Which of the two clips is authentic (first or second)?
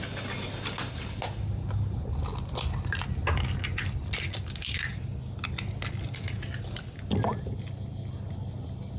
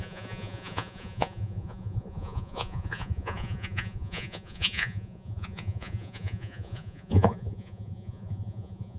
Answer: first